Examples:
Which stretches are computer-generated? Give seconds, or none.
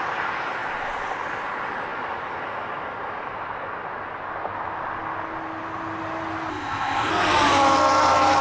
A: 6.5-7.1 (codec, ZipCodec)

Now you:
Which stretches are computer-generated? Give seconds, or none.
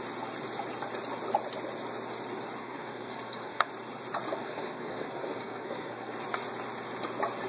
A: 2.6-3.7 (codec, SNAC); 4.3-6.1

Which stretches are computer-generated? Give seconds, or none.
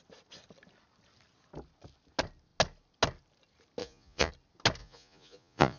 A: 3.8-4.3 (vocoder, Vocos); 4.8-5.8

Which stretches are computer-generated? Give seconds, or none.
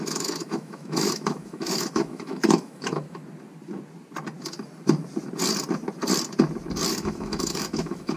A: 0.0-3.2 (autoencoder, DAC-VAE); 6.9-8.2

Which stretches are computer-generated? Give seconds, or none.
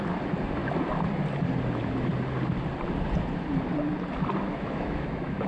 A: 4.5-5.5 (autoencoder, DAC-VAE)